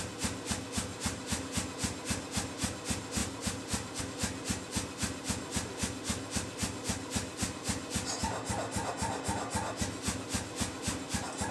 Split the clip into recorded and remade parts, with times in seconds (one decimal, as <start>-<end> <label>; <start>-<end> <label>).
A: 0.0-0.9 recorded; 0.9-1.5 remade; 1.5-3.2 recorded; 3.2-4.0 remade; 4.0-8.2 recorded; 8.2-8.9 remade; 8.9-11.5 recorded